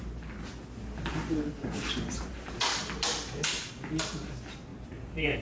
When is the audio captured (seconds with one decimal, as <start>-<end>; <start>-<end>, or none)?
0.0-5.4